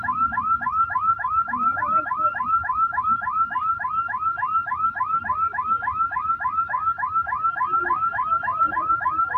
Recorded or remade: recorded